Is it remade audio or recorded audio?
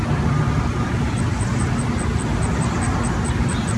recorded